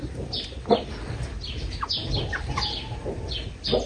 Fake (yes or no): no